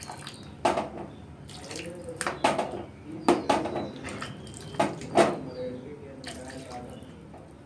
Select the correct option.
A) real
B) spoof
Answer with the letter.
A